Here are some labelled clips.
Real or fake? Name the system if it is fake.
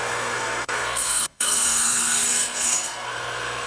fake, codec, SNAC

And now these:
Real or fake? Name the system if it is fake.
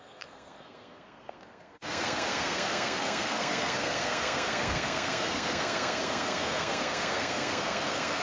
fake, codec, SNAC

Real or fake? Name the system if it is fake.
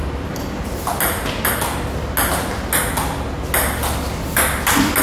real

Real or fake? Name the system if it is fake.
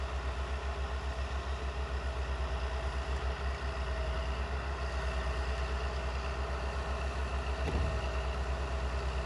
real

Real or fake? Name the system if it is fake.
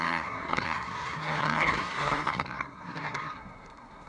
fake, codec, SNAC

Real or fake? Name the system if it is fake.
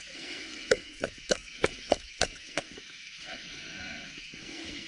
fake, codec, SNAC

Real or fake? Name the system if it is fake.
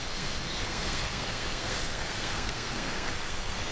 fake, codec, SNAC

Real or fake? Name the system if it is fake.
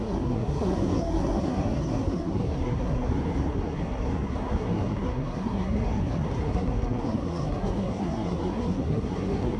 fake, codec, SNAC